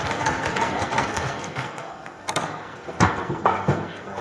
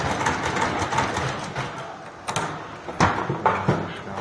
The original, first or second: second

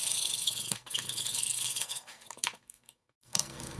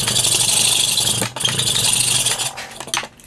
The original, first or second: second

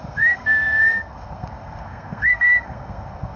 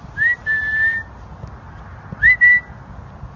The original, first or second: second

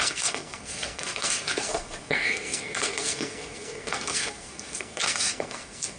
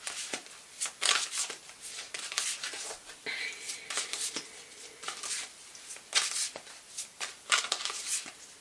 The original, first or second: second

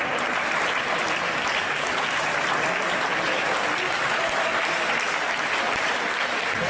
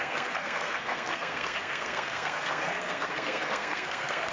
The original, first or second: first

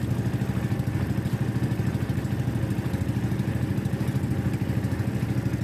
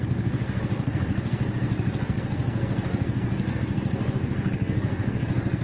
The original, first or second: first